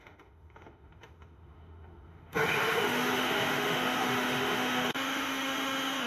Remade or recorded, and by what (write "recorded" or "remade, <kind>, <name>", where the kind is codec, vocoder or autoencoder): remade, autoencoder, DAC-VAE